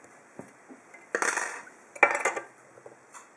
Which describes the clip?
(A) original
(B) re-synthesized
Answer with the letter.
A